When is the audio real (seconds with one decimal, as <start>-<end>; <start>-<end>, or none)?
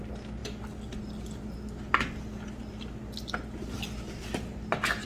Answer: 0.0-5.1